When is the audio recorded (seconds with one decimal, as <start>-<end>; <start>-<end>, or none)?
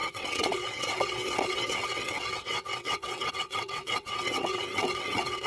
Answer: none